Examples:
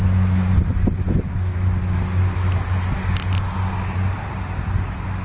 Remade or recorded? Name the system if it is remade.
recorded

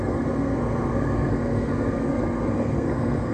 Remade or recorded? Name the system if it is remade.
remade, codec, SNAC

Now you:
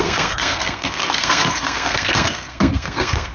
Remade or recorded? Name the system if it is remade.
remade, codec, SNAC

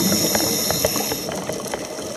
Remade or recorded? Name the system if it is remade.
recorded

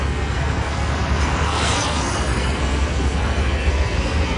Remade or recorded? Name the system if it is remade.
remade, codec, SNAC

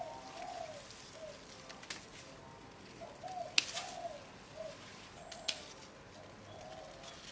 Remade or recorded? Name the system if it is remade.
recorded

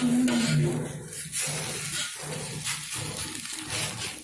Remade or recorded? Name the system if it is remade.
recorded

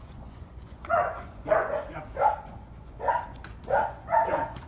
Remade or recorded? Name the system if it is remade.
remade, vocoder, Vocos